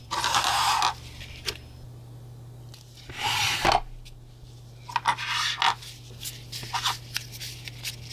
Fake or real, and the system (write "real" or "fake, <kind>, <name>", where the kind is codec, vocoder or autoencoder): real